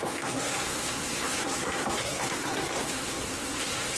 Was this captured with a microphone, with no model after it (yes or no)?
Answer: no